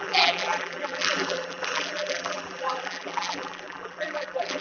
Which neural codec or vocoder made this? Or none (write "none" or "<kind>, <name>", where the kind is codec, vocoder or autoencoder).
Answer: vocoder, BigVGAN v2